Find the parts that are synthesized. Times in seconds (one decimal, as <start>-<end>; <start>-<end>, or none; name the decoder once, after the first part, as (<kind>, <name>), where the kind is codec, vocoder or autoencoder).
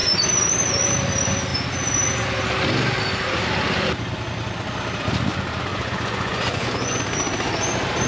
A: 5.7-7.0 (vocoder, Vocos)